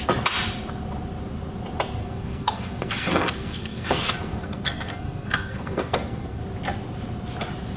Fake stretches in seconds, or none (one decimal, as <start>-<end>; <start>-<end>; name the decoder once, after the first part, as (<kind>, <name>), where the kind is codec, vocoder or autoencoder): 2.0-6.4 (codec, SNAC)